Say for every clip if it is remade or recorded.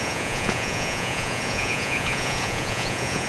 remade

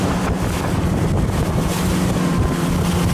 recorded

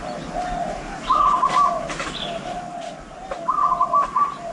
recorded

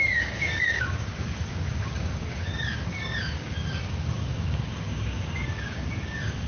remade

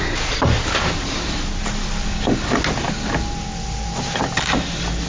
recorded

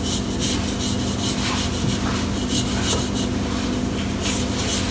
recorded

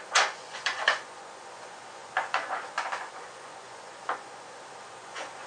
remade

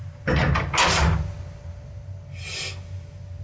recorded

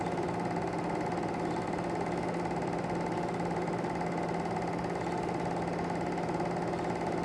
recorded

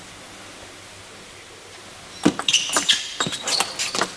recorded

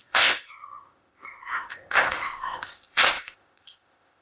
remade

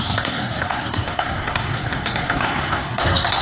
remade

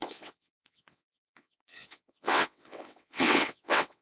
remade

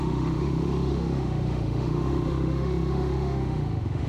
remade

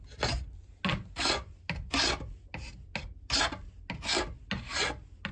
recorded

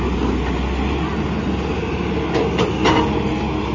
recorded